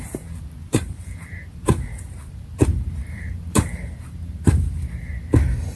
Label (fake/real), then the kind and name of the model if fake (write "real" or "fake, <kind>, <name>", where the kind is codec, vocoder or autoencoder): fake, vocoder, BigVGAN v2